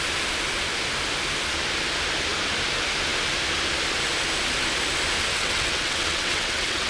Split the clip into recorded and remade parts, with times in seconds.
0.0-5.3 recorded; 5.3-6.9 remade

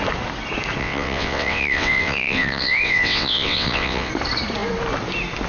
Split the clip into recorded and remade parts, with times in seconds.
0.0-0.8 recorded; 0.8-4.1 remade; 4.1-5.5 recorded

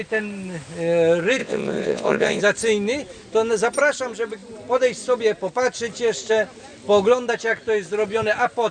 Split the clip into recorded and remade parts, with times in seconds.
0.0-1.4 recorded; 1.4-2.4 remade; 2.4-8.7 recorded

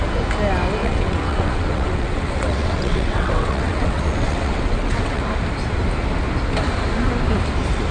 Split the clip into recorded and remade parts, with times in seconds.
0.0-0.8 recorded; 0.8-5.2 remade; 5.2-7.9 recorded

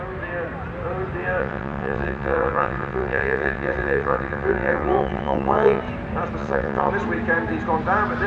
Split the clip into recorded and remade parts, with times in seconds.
0.0-1.4 recorded; 1.4-5.8 remade; 5.8-6.4 recorded; 6.4-6.9 remade; 6.9-8.3 recorded

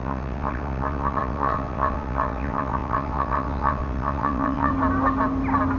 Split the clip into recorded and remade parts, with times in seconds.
0.0-4.7 remade; 4.7-5.8 recorded

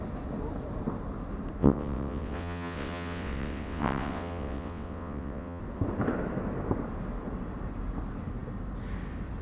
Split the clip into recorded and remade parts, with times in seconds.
0.0-1.6 recorded; 1.6-5.6 remade; 5.6-9.4 recorded